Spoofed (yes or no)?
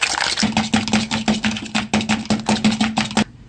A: no